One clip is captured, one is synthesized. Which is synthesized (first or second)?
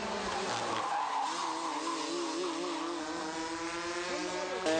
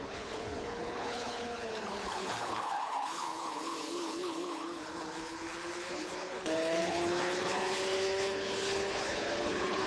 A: second